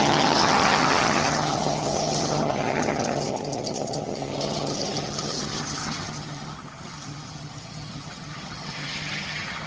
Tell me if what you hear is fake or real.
fake